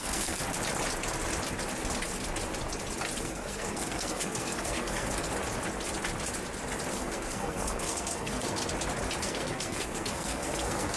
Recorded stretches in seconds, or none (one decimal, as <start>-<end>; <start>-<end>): 0.4-3.2; 5.3-6.9; 8.6-9.2